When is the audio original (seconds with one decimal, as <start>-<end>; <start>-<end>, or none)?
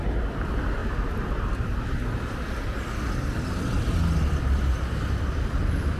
0.8-4.4